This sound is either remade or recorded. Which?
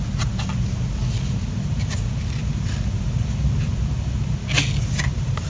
recorded